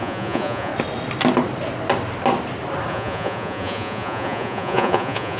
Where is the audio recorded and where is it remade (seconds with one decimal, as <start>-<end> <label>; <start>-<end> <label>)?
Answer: 0.0-0.7 remade; 0.7-2.9 recorded; 2.9-5.4 remade